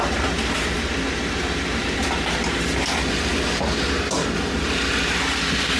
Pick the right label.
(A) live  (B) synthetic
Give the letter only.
A